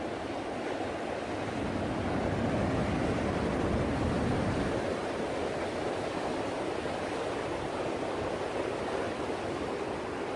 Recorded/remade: recorded